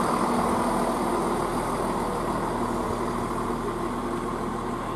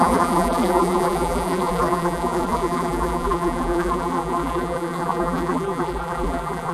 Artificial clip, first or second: second